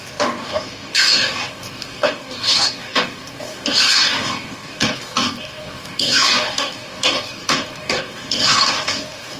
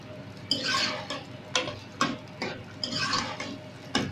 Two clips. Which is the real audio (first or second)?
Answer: second